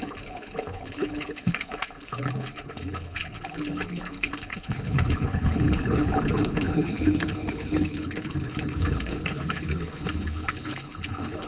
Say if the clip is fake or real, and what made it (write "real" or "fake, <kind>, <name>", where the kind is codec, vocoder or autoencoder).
fake, codec, HILCodec